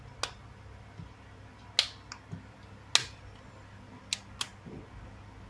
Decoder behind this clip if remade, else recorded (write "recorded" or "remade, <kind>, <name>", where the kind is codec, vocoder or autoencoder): recorded